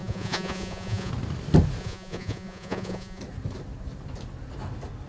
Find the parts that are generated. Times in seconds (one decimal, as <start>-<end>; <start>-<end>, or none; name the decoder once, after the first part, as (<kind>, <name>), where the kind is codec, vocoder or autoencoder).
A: 0.0-1.1 (vocoder, Vocos); 1.8-3.2